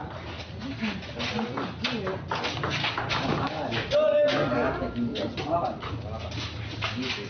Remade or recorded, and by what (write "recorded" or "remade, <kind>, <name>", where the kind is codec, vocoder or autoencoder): recorded